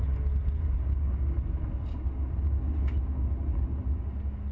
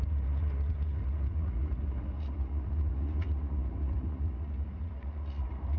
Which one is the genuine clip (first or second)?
first